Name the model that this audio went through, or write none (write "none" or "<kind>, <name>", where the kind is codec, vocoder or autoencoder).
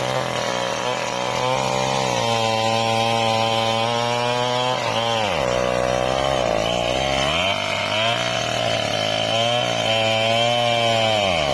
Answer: none